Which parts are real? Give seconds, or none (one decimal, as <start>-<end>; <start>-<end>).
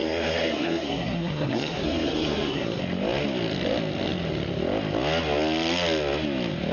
2.8-6.7